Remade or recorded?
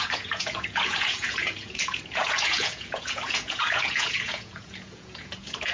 remade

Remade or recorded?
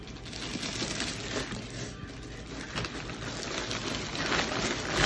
recorded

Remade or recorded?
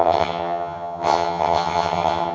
remade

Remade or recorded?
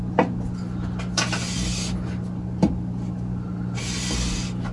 recorded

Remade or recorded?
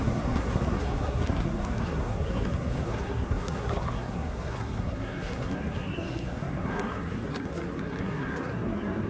remade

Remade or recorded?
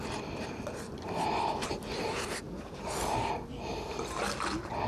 recorded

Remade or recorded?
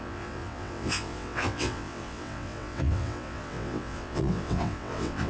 remade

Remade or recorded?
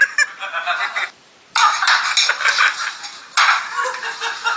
recorded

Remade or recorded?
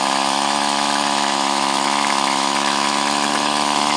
remade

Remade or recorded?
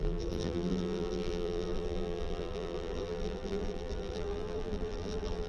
remade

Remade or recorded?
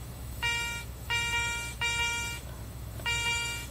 remade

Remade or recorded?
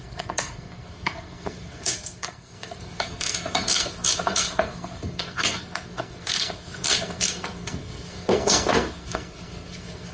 remade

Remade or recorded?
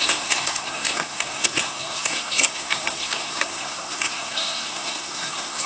remade